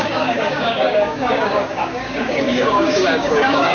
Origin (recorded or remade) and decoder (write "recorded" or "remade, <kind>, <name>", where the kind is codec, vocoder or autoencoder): remade, codec, DAC